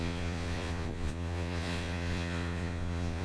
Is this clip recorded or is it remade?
remade